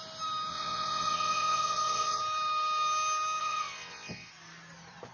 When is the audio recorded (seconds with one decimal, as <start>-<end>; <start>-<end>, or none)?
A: 0.0-0.5; 2.2-3.4; 4.3-5.1